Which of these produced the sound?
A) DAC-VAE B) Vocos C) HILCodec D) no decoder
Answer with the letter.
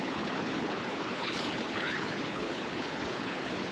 C